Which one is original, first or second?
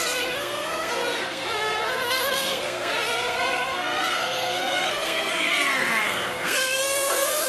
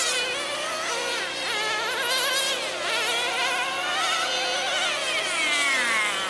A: second